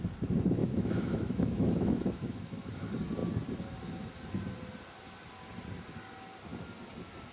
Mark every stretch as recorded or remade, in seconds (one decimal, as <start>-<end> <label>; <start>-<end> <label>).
0.0-0.6 recorded; 0.6-2.6 remade; 2.6-7.3 recorded